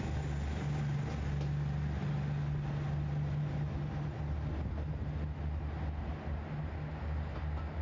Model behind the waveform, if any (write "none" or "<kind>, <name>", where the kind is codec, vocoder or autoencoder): none